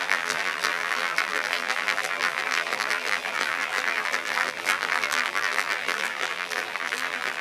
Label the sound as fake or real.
fake